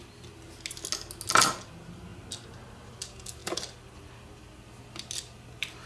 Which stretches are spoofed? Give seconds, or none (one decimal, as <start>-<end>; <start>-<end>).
none